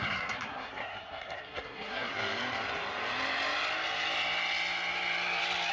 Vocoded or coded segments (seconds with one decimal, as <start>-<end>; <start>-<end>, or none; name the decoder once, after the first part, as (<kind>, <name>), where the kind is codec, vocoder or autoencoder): 0.0-2.1 (codec, SNAC)